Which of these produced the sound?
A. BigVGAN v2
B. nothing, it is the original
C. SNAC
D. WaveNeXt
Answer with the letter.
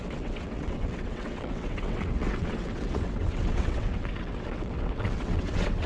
D